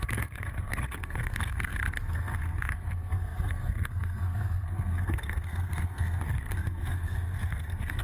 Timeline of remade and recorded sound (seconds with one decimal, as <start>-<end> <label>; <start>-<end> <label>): 0.0-8.0 remade